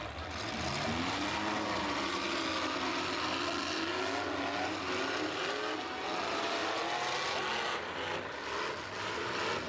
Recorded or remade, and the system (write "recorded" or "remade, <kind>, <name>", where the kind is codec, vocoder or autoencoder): recorded